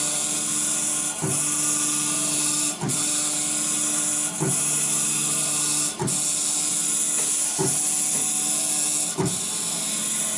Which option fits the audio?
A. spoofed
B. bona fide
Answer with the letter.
B